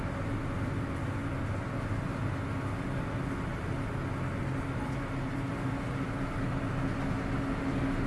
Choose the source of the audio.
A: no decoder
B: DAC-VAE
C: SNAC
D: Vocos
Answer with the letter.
A